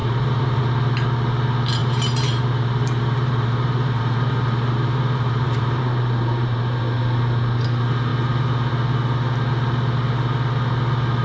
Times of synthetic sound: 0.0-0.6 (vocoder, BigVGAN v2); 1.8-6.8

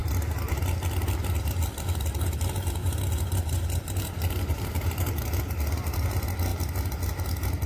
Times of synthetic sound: 0.0-0.6 (vocoder, BigVGAN v2); 2.8-5.1